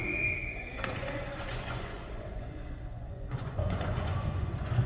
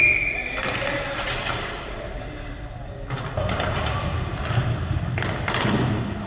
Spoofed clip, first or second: first